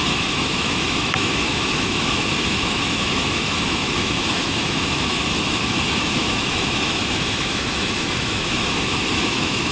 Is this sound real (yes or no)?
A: no